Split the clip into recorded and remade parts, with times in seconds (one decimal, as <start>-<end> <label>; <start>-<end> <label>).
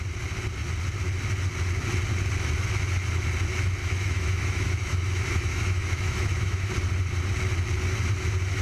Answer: 0.0-3.8 recorded; 3.8-6.7 remade; 6.7-8.6 recorded